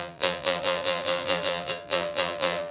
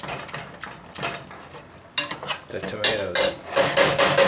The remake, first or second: first